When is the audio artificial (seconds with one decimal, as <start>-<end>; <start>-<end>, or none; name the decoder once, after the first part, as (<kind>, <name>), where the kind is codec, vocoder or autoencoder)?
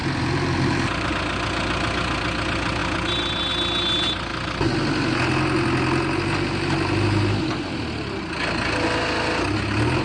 0.0-1.1 (vocoder, BigVGAN v2)